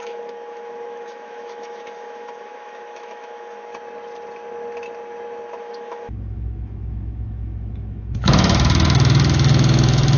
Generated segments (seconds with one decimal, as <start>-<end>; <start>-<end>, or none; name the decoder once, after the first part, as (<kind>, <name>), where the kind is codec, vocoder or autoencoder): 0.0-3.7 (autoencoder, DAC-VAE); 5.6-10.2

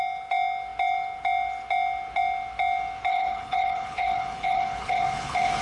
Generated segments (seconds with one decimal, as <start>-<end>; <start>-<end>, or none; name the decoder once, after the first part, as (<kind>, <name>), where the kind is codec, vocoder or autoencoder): 3.1-5.6 (codec, HILCodec)

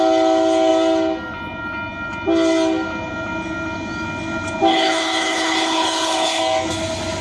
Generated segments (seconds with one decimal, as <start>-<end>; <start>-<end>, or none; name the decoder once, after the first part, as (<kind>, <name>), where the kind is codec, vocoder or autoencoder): 4.7-6.4 (codec, HILCodec)

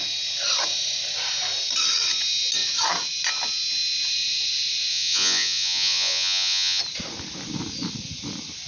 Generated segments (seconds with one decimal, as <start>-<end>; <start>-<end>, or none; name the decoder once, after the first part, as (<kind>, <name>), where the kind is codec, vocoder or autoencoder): 4.9-6.8 (vocoder, Vocos)